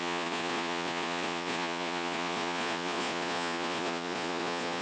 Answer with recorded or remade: remade